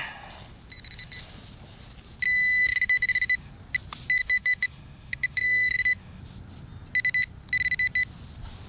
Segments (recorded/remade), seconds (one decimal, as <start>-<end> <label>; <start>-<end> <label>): 0.0-2.6 recorded; 2.6-3.5 remade; 3.5-4.2 recorded; 4.2-6.2 remade; 6.2-8.7 recorded